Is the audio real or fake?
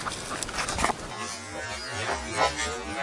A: real